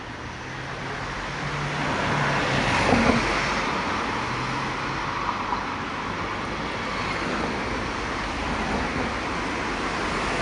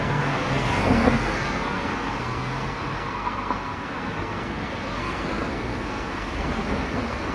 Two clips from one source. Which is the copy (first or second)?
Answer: second